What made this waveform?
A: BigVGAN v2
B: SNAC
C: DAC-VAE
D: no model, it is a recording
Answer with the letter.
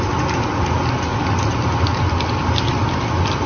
D